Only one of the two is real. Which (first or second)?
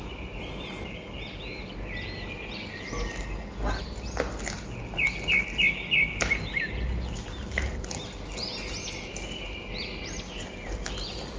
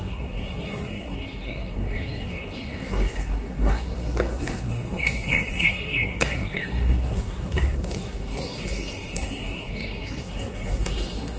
first